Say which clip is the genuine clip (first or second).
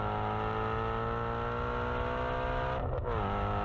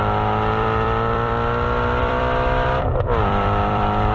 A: first